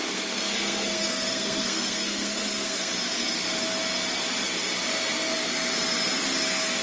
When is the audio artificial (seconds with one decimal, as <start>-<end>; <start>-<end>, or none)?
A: 0.0-2.9